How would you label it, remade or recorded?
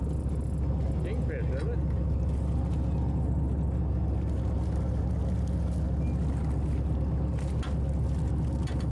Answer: recorded